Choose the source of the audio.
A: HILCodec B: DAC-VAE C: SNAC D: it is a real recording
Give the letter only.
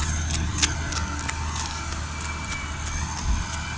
D